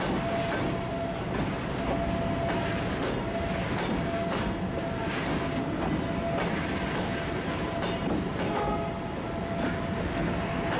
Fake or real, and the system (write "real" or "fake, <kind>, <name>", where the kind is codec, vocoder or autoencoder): real